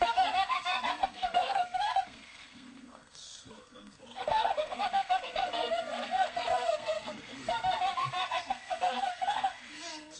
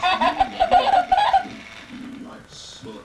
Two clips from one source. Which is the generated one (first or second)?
first